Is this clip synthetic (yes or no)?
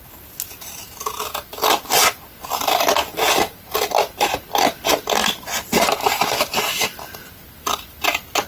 no